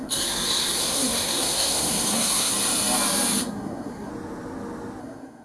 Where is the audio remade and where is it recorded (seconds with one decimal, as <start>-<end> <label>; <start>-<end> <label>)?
0.0-2.5 remade; 2.5-3.4 recorded; 3.4-4.1 remade; 4.1-5.0 recorded; 5.0-5.4 remade